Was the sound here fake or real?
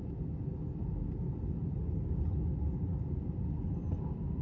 real